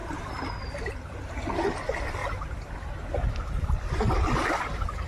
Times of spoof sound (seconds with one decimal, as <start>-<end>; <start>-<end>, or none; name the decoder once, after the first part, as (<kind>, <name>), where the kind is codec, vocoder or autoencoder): 2.2-3.7 (vocoder, BigVGAN v2)